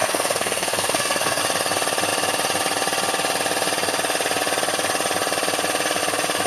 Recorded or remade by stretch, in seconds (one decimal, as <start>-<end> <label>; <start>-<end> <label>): 0.0-1.4 remade; 1.4-6.5 recorded